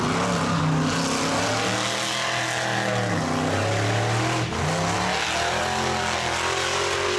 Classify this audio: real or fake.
real